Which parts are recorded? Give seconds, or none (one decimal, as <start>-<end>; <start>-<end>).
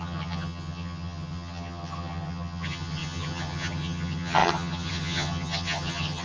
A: none